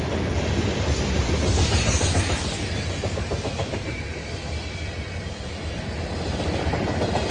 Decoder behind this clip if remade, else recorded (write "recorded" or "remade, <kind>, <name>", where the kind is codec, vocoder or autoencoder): recorded